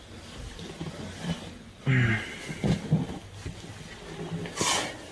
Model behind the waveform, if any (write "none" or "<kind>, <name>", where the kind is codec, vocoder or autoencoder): none